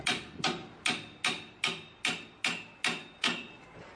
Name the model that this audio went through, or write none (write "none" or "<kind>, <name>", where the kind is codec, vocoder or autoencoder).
none